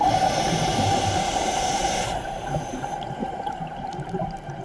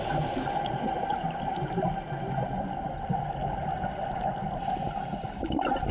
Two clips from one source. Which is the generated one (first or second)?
first